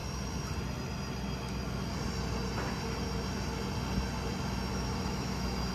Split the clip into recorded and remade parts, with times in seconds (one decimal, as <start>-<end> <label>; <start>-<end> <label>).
0.0-4.7 recorded; 4.7-5.7 remade